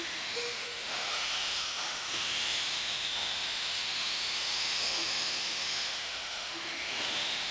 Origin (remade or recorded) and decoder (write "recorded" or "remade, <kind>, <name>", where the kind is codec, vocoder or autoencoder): remade, autoencoder, DAC-VAE